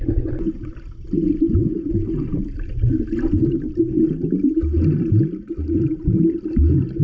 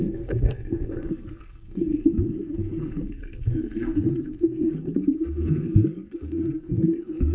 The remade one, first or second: second